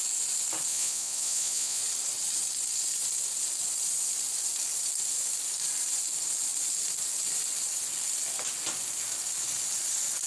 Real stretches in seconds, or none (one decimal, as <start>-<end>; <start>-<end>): 0.0-0.7; 1.8-10.3

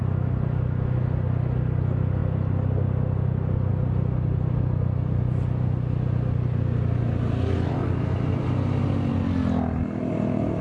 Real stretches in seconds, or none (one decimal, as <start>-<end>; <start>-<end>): 0.0-10.6